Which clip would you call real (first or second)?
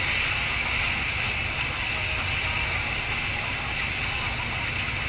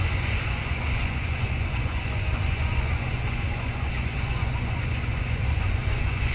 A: first